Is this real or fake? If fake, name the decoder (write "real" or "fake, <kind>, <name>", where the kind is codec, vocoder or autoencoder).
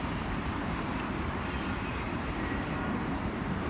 fake, vocoder, BigVGAN v2